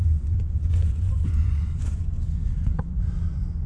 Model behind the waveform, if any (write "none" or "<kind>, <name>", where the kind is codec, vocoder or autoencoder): vocoder, Vocos